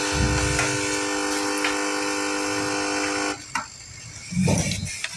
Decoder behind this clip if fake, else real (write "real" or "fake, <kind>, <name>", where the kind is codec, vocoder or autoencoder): real